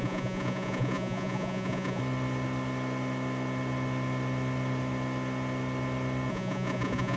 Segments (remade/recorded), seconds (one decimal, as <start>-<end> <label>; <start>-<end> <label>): 0.0-2.0 remade; 2.0-6.3 recorded; 6.3-7.2 remade

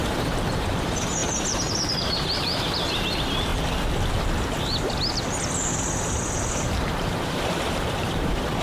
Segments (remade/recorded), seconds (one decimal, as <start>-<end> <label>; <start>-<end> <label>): 0.0-3.5 remade; 3.5-6.5 recorded; 6.5-8.6 remade

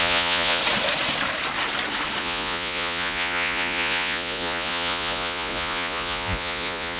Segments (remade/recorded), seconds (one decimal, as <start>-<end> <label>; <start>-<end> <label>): 0.0-0.6 remade; 0.6-2.2 recorded; 2.2-7.0 remade

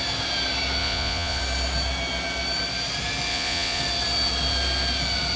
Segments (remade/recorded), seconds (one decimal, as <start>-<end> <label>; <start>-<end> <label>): 0.0-0.8 recorded; 0.8-1.4 remade; 1.4-3.3 recorded; 3.3-3.8 remade; 3.8-5.4 recorded

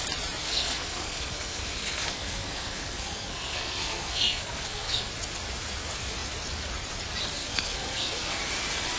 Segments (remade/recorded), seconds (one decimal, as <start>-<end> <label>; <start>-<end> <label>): 0.0-0.4 recorded; 0.4-5.1 remade; 5.1-7.4 recorded; 7.4-8.4 remade; 8.4-9.0 recorded

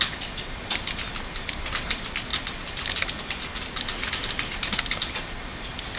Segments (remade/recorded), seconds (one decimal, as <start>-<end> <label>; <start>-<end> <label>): 0.0-6.0 recorded

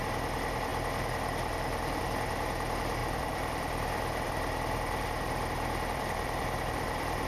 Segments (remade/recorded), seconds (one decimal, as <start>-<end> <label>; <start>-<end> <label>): 0.0-3.0 recorded; 3.0-7.3 remade

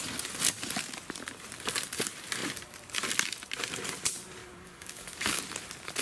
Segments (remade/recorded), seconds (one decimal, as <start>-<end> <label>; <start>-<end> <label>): 0.0-4.4 recorded; 4.4-5.4 remade; 5.4-6.0 recorded